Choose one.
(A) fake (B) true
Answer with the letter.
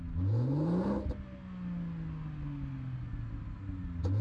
B